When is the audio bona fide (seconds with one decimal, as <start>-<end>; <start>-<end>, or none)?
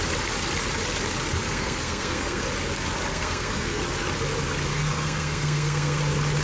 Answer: 0.0-1.4; 2.4-3.1; 3.8-4.7; 6.0-6.4